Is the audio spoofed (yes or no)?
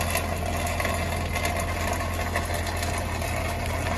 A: no